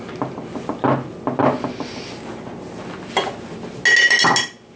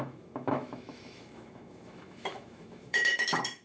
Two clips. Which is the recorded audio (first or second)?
first